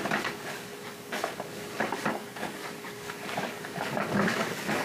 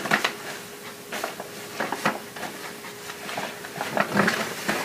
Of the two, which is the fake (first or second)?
first